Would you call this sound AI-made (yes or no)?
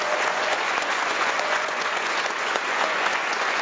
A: yes